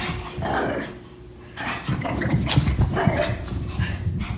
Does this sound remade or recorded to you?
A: recorded